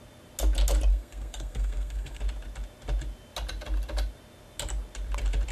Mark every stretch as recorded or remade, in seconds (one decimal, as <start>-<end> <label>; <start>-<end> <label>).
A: 0.0-0.9 recorded; 0.9-2.2 remade; 2.2-5.5 recorded